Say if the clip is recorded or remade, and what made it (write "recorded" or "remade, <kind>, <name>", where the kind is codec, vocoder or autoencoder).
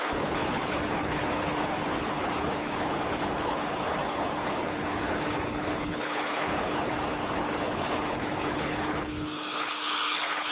remade, codec, HILCodec